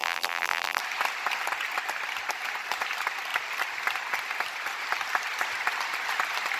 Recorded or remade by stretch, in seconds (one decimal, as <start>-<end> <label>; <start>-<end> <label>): 0.0-0.8 remade; 0.8-6.6 recorded

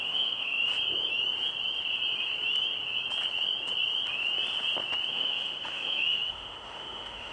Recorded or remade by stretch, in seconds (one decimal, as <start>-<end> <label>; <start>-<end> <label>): 0.0-0.7 remade; 0.7-5.1 recorded; 5.1-7.3 remade

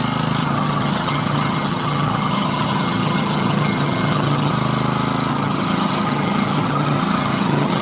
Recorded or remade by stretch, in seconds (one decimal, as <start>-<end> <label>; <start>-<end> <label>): 0.0-0.4 recorded; 0.4-4.5 remade; 4.5-5.3 recorded; 5.3-7.8 remade

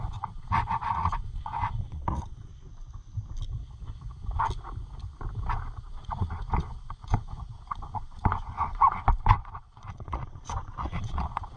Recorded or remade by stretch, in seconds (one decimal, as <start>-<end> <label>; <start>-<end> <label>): 0.0-2.5 remade; 2.5-5.8 recorded; 5.8-11.6 remade

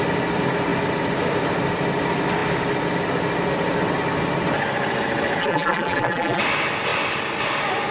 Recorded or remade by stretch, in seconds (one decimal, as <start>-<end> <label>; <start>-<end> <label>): 0.0-5.4 recorded; 5.4-6.4 remade; 6.4-7.9 recorded

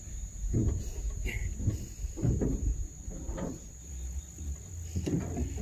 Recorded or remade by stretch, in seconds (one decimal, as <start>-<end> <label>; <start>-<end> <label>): 0.0-2.7 recorded; 2.7-3.8 remade; 3.8-5.6 recorded